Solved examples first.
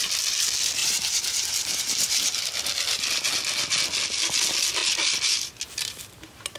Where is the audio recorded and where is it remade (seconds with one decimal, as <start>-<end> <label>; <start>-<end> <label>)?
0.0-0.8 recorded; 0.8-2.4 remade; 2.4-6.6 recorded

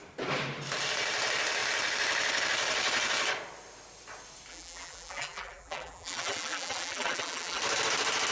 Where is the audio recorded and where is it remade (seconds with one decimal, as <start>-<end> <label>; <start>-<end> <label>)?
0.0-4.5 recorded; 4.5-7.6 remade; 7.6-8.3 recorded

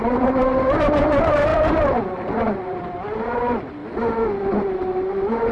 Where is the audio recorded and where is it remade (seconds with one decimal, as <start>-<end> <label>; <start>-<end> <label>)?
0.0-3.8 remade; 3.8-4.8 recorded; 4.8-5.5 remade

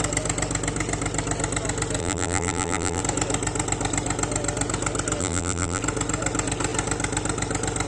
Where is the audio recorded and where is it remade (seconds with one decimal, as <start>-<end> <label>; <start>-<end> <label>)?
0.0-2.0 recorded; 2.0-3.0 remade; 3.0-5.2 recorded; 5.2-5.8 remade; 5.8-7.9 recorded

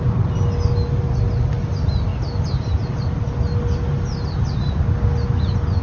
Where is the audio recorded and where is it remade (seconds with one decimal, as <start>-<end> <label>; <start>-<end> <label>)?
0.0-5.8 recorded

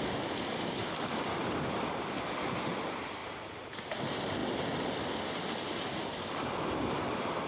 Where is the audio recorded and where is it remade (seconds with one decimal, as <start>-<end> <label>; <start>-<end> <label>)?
0.0-3.2 recorded; 3.2-3.8 remade; 3.8-7.5 recorded

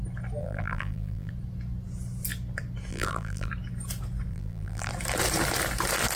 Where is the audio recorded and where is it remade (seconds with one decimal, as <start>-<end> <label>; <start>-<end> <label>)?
0.0-0.4 recorded; 0.4-1.3 remade; 1.3-2.9 recorded; 2.9-3.5 remade; 3.5-4.3 recorded; 4.3-4.9 remade; 4.9-6.2 recorded